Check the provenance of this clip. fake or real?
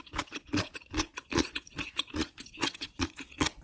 fake